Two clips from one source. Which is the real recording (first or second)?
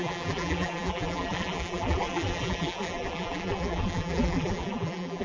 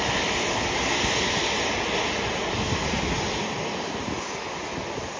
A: second